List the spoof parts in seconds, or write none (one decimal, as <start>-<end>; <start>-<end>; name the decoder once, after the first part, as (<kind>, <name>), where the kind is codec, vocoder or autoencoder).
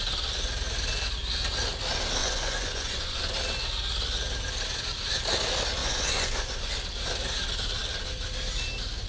2.2-3.2 (vocoder, Vocos); 5.8-6.7